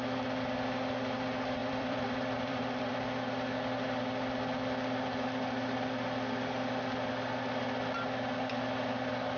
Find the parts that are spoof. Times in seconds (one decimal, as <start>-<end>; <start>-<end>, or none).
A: 1.6-3.0